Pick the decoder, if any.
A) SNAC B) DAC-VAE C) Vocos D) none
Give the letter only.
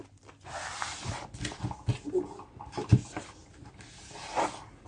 D